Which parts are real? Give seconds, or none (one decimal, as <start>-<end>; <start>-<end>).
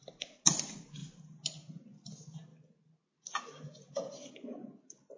0.0-5.2